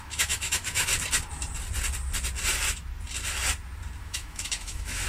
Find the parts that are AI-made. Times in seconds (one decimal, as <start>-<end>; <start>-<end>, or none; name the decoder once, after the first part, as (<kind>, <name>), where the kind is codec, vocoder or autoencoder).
0.0-0.9 (autoencoder, DAC-VAE); 4.0-5.1